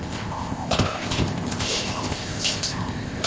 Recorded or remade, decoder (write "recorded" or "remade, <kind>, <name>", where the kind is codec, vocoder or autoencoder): remade, codec, ZipCodec